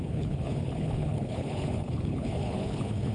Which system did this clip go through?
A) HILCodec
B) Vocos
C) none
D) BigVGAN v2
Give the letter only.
A